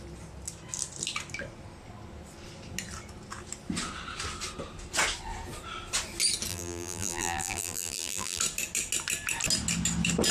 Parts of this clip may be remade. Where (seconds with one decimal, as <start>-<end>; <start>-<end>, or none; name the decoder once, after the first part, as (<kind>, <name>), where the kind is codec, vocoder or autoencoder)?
6.5-8.4 (vocoder, BigVGAN v2)